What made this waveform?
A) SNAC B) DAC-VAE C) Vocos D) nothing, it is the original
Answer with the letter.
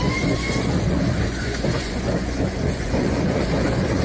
C